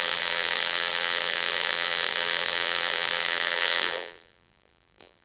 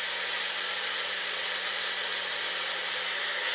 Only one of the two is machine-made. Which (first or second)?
first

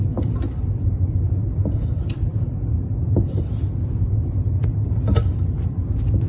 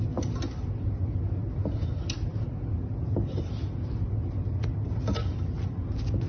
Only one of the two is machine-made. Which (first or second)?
first